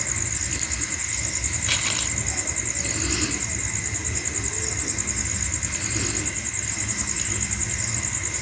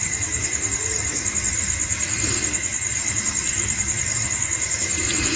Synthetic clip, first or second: second